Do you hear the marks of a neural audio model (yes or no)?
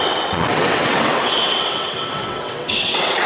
yes